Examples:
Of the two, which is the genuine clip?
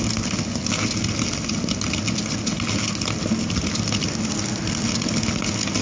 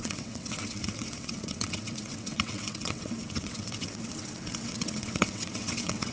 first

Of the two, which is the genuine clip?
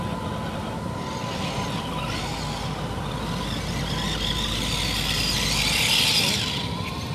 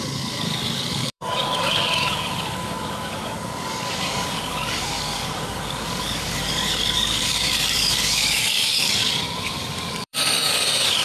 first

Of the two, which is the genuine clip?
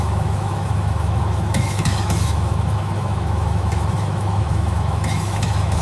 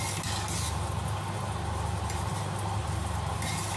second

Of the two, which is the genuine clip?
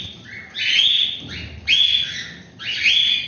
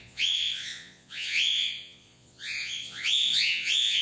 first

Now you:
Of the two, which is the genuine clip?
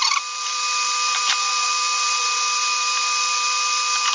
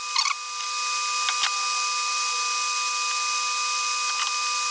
second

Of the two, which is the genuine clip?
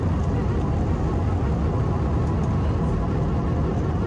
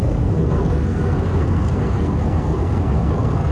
first